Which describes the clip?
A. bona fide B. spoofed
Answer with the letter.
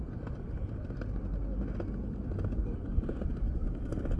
A